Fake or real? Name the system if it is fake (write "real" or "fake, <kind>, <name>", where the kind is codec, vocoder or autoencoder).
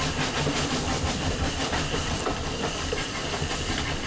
fake, vocoder, BigVGAN v2